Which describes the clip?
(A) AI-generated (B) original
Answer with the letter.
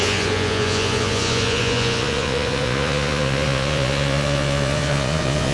A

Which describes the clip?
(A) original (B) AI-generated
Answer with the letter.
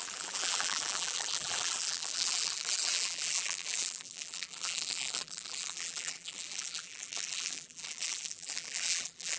B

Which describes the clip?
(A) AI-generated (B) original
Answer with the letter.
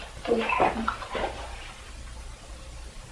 B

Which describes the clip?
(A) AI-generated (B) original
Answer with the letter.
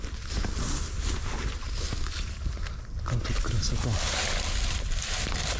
B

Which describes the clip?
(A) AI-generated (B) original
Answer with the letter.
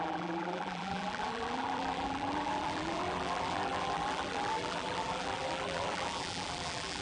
A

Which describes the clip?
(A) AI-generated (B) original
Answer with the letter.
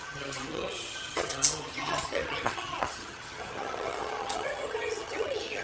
A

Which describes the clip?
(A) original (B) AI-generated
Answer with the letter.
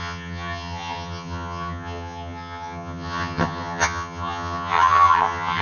B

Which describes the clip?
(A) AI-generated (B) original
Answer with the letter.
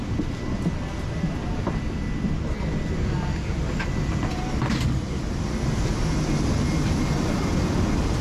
B